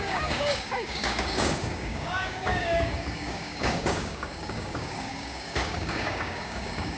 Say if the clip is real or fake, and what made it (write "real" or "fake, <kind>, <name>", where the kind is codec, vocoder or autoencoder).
fake, codec, DAC